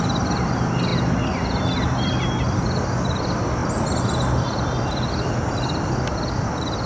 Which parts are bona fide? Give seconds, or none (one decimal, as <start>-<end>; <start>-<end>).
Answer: 0.9-2.4